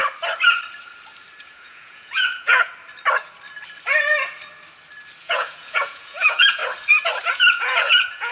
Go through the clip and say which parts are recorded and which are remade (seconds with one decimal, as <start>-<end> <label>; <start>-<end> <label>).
0.0-1.4 recorded; 1.4-2.7 remade; 2.7-5.2 recorded; 5.2-6.6 remade; 6.6-7.3 recorded; 7.3-8.3 remade